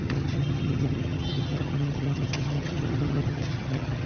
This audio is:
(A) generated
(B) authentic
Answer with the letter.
A